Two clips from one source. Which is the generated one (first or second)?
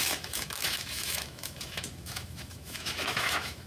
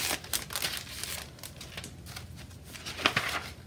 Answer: first